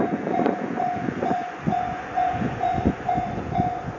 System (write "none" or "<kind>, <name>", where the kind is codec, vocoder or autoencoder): vocoder, Vocos